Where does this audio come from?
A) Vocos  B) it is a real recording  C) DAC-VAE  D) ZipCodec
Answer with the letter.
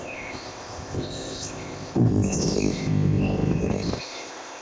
D